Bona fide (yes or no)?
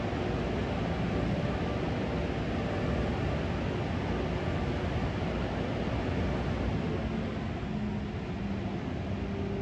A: yes